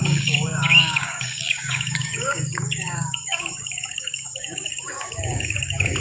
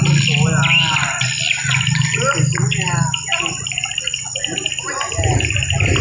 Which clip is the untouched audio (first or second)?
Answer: second